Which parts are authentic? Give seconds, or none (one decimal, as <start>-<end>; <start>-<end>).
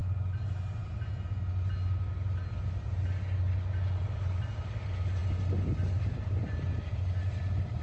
0.0-7.8